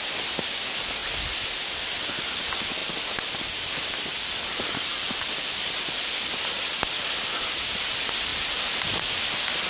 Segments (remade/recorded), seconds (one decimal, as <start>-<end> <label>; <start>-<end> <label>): 0.0-9.7 recorded